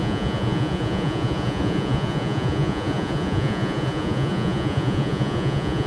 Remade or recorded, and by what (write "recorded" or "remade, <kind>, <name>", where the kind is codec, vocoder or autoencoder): remade, vocoder, Vocos